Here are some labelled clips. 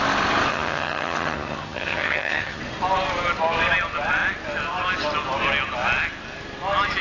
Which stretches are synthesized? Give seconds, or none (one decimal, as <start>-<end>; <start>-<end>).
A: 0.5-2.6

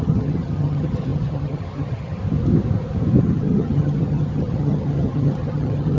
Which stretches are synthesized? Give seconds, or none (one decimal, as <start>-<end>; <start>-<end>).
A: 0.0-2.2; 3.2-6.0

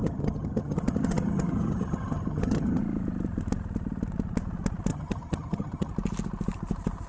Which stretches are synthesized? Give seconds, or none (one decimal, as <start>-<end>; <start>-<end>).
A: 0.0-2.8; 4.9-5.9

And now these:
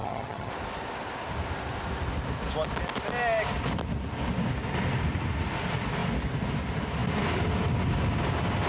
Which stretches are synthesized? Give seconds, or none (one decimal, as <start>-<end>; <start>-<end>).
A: 0.0-0.5

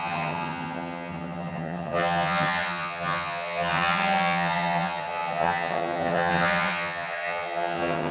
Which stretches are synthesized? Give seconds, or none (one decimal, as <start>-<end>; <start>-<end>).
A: 0.0-8.1